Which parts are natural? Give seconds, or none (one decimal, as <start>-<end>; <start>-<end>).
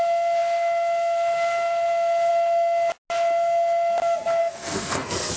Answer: 0.0-4.4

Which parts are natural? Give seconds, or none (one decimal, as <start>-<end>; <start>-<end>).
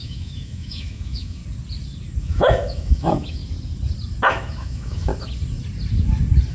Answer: 1.4-2.2; 3.4-4.3; 5.1-6.5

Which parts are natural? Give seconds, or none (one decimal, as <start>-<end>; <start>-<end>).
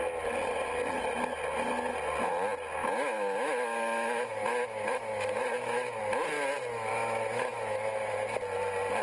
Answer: 0.0-2.8; 6.0-6.9; 8.1-9.0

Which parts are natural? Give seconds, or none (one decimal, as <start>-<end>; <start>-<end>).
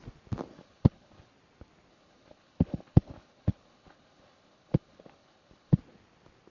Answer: 0.0-0.5; 1.3-1.9; 5.8-6.5